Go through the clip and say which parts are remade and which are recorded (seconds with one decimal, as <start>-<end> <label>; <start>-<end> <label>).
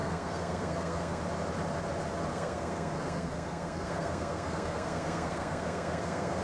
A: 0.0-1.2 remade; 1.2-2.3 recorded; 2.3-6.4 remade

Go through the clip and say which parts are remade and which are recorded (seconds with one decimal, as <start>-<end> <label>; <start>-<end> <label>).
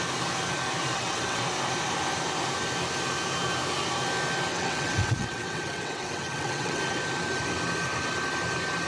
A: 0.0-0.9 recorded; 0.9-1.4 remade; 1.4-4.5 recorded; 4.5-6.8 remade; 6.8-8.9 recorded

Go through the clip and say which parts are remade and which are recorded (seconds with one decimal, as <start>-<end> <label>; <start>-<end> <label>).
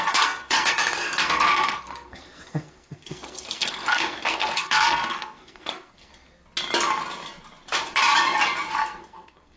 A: 0.0-6.1 remade; 6.1-8.7 recorded; 8.7-9.6 remade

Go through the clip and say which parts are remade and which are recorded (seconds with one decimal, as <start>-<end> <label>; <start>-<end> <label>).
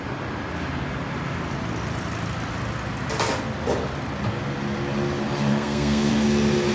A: 0.0-5.5 recorded; 5.5-6.1 remade; 6.1-6.7 recorded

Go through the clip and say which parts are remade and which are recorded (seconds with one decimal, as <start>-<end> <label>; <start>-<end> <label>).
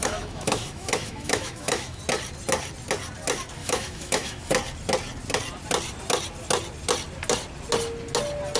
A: 0.0-2.0 remade; 2.0-3.6 recorded; 3.6-4.5 remade; 4.5-8.6 recorded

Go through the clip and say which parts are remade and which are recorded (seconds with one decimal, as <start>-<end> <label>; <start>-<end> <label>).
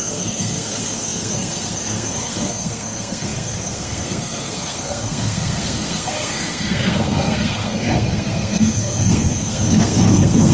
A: 0.0-10.5 remade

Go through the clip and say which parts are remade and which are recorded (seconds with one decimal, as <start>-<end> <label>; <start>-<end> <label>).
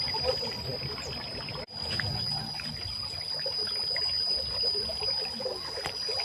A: 0.0-6.2 recorded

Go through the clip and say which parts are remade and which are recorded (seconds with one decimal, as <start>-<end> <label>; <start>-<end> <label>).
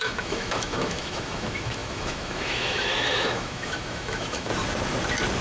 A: 0.0-4.5 remade; 4.5-5.4 recorded